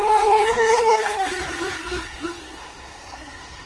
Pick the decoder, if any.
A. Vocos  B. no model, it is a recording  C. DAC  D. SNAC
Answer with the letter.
D